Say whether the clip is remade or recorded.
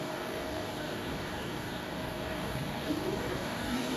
remade